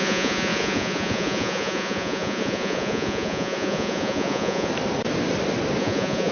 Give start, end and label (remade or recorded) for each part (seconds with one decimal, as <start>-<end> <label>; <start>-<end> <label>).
0.0-4.7 remade; 4.7-5.8 recorded; 5.8-6.3 remade